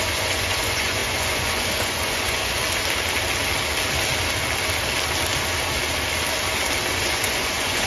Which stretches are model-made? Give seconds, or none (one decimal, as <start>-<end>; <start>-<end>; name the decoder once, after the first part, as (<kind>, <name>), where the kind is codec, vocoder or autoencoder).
0.0-2.6 (vocoder, Vocos); 6.9-7.9